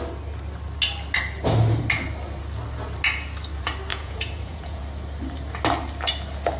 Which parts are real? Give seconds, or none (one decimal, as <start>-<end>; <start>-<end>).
0.0-3.9; 4.8-6.6